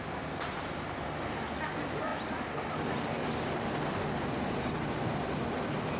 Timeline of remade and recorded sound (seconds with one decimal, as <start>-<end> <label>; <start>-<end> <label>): 0.0-6.0 recorded

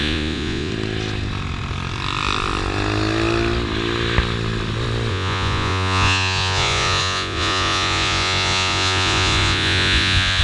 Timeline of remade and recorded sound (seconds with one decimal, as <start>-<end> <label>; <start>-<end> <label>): 0.0-0.7 remade; 0.7-5.1 recorded; 5.1-10.4 remade

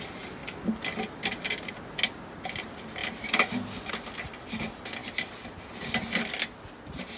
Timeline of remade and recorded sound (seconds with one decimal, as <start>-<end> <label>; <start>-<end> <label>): 0.0-3.0 recorded; 3.0-3.9 remade; 3.9-5.0 recorded; 5.0-5.7 remade; 5.7-7.2 recorded

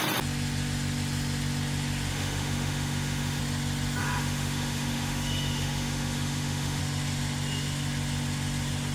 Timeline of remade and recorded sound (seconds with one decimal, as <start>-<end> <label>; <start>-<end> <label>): 0.0-2.1 recorded; 2.1-3.4 remade; 3.4-4.0 recorded; 4.0-6.8 remade; 6.8-8.9 recorded

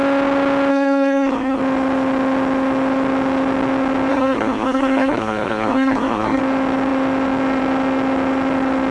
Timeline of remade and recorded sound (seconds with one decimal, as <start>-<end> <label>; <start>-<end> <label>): 0.0-0.7 recorded; 0.7-1.6 remade; 1.6-4.1 recorded; 4.1-6.4 remade; 6.4-8.9 recorded